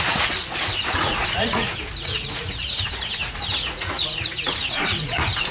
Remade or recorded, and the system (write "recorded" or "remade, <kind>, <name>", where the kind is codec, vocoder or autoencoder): remade, vocoder, Vocos